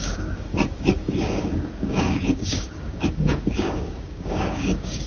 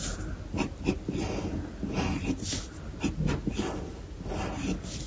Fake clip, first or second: first